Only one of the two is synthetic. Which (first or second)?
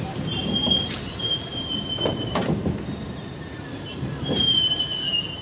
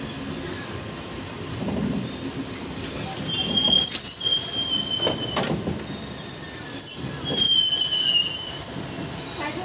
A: first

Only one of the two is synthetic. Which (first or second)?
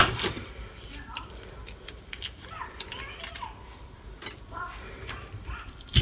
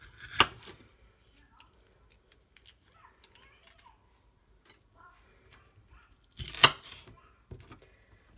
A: first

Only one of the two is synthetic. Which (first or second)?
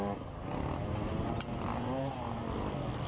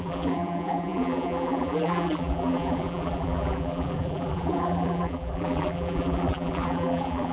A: second